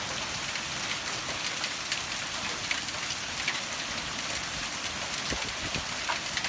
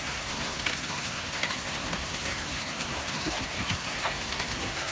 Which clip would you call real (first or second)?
first